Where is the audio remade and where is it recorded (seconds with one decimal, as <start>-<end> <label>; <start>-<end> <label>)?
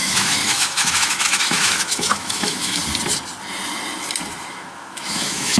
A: 0.0-2.8 remade; 2.8-4.5 recorded; 4.5-5.6 remade